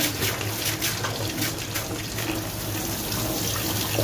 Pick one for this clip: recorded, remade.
recorded